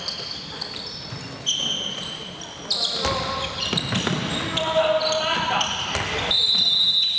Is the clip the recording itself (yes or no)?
yes